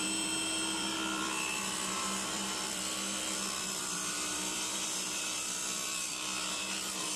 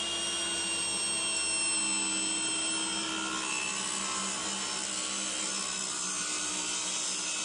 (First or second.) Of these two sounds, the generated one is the first